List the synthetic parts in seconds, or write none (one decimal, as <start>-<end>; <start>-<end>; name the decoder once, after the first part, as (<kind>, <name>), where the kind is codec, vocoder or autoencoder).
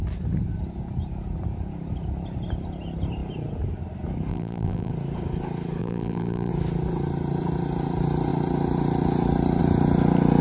4.3-4.9 (vocoder, BigVGAN v2); 5.8-6.5